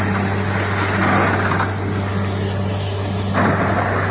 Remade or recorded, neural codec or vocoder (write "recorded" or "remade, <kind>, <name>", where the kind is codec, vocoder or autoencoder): recorded